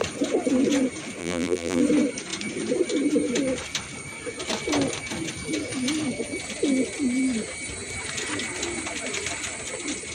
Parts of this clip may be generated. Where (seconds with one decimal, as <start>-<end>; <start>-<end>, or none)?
1.2-1.8